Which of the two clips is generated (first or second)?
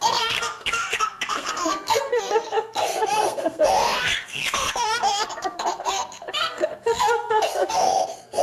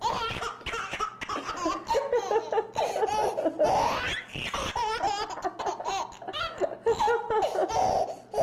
first